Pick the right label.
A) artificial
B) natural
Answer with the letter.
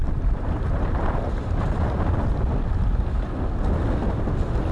B